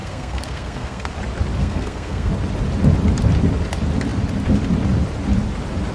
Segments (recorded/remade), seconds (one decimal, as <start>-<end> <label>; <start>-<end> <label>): 0.0-1.1 remade; 1.1-1.6 recorded; 1.6-2.3 remade; 2.3-5.9 recorded